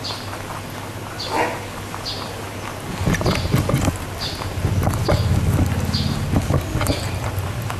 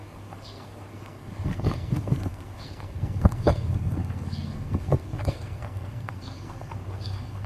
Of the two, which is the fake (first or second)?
second